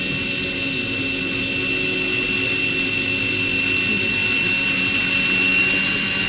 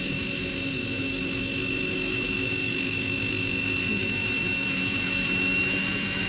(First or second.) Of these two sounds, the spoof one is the second